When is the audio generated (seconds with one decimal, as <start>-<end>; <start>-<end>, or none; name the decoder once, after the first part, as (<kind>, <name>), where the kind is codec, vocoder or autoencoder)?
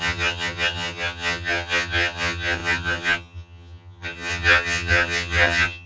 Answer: 0.0-5.9 (vocoder, HiFi-GAN)